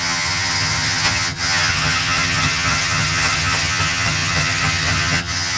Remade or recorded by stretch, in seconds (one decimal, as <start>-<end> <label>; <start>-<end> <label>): 0.0-5.6 remade